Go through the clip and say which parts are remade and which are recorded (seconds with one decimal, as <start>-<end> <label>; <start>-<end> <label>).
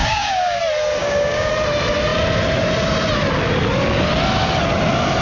0.0-0.6 remade; 0.6-1.0 recorded; 1.0-1.5 remade; 1.5-5.2 recorded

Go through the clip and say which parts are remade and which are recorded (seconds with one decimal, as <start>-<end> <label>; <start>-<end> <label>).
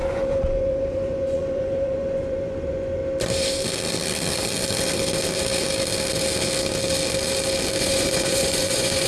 0.0-3.0 remade; 3.0-7.8 recorded; 7.8-9.1 remade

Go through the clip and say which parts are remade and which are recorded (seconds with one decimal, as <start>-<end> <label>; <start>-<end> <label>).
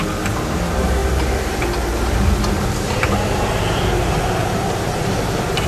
0.0-4.4 recorded; 4.4-5.0 remade; 5.0-5.7 recorded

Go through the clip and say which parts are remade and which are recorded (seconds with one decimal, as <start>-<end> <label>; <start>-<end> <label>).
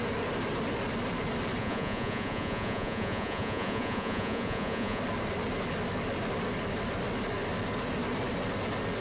0.0-1.6 recorded; 1.6-5.0 remade; 5.0-9.0 recorded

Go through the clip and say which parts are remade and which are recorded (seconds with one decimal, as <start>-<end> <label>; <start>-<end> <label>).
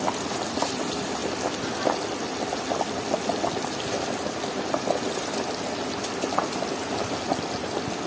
0.0-8.1 recorded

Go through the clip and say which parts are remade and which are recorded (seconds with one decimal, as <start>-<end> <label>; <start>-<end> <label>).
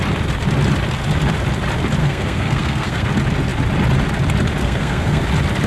0.0-2.0 recorded; 2.0-3.1 remade; 3.1-4.6 recorded; 4.6-5.2 remade; 5.2-5.7 recorded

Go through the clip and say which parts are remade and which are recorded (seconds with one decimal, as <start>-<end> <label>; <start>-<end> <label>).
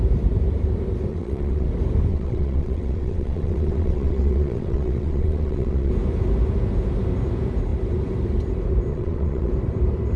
0.0-1.1 recorded; 1.1-1.7 remade; 1.7-2.1 recorded; 2.1-5.9 remade; 5.9-8.9 recorded; 8.9-9.5 remade; 9.5-10.2 recorded